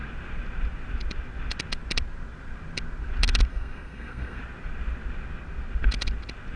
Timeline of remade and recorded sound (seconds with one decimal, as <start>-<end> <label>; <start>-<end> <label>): 0.0-3.5 recorded; 3.5-4.4 remade; 4.4-6.6 recorded